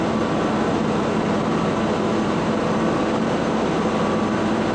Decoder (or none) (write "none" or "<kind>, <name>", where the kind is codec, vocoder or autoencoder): none